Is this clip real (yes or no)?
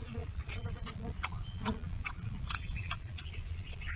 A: no